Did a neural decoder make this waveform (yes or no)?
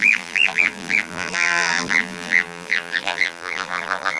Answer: yes